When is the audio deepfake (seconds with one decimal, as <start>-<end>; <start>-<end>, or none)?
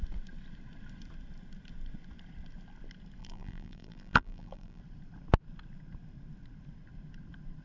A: 3.2-4.8